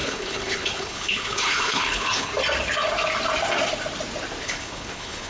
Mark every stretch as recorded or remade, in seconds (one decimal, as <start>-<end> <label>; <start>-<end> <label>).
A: 0.0-2.3 remade; 2.3-4.4 recorded; 4.4-5.3 remade